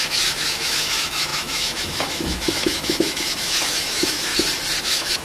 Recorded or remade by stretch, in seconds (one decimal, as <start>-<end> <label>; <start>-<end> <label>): 0.0-4.3 remade; 4.3-4.8 recorded; 4.8-5.2 remade